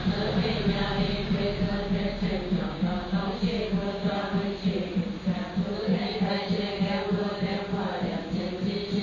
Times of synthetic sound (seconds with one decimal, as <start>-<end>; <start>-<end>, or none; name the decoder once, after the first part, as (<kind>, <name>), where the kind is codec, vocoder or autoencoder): 1.2-4.1 (codec, DAC); 5.9-6.5